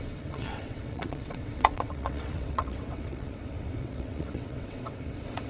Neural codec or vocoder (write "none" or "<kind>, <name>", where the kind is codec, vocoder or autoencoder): vocoder, WaveNeXt